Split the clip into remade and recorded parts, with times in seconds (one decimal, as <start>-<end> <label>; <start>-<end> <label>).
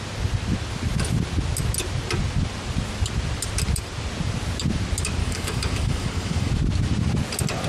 0.0-5.2 recorded; 5.2-6.5 remade; 6.5-7.7 recorded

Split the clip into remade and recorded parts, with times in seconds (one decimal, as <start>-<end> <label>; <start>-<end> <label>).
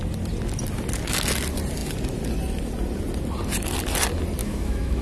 0.0-4.4 recorded; 4.4-5.0 remade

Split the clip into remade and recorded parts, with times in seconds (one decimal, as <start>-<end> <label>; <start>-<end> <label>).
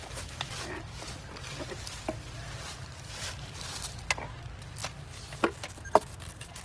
0.0-2.7 recorded; 2.7-4.8 remade; 4.8-5.7 recorded; 5.7-6.6 remade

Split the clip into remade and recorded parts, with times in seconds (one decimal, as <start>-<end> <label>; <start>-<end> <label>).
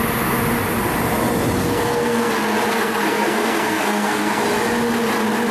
0.0-1.6 recorded; 1.6-2.3 remade; 2.3-2.7 recorded; 2.7-4.4 remade; 4.4-5.5 recorded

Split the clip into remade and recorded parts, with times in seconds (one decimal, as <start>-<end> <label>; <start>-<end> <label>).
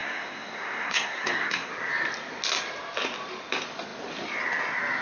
0.0-1.7 remade; 1.7-5.0 recorded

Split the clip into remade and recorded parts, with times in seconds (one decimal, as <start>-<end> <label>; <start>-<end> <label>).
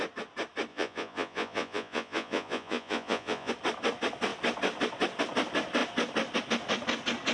0.0-0.7 recorded; 0.7-3.5 remade; 3.5-7.3 recorded